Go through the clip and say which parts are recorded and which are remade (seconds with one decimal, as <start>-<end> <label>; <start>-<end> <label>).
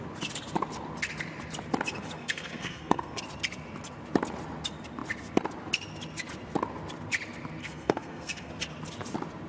0.0-2.2 recorded; 2.2-3.2 remade; 3.2-7.6 recorded; 7.6-8.5 remade; 8.5-9.5 recorded